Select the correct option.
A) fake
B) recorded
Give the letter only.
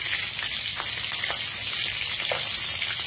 B